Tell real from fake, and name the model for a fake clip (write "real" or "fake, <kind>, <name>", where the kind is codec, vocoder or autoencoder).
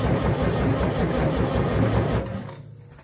real